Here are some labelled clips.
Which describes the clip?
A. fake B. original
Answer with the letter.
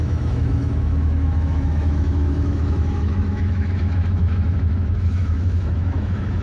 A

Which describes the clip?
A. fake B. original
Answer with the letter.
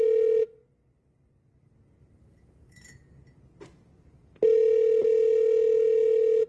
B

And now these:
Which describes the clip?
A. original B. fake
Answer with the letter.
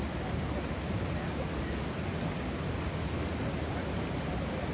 A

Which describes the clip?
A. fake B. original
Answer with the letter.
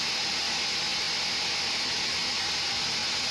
B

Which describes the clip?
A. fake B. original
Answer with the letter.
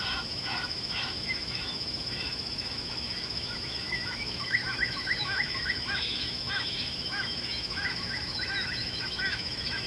A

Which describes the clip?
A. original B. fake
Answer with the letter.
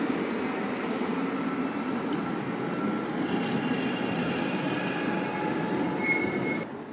A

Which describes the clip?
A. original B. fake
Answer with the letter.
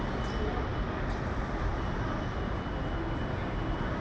A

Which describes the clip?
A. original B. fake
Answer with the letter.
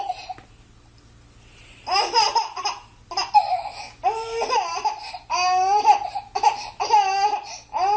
A